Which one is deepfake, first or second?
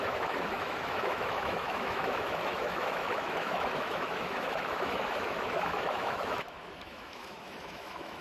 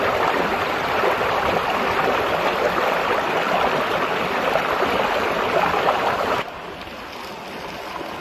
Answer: first